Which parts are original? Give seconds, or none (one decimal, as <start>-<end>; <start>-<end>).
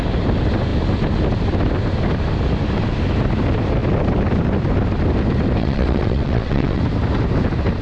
0.0-5.6; 6.8-7.8